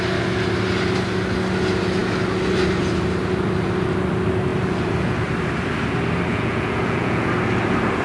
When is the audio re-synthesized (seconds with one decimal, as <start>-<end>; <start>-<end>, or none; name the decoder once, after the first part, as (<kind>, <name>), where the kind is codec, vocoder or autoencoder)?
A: 6.3-7.3 (vocoder, Vocos)